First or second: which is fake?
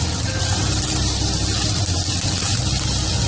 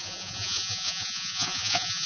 second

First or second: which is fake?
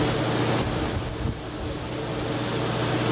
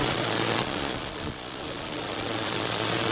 second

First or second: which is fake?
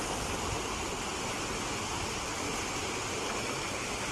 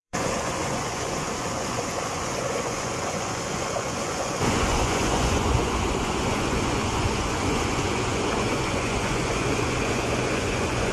second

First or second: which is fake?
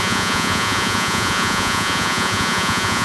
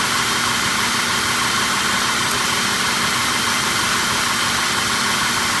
first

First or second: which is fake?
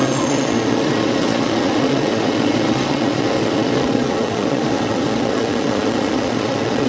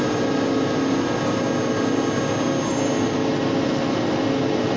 first